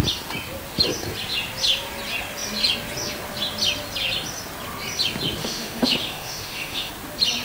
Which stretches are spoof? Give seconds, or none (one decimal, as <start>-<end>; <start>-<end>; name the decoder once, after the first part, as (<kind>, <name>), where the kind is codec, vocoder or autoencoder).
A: 5.4-6.9 (autoencoder, DAC-VAE)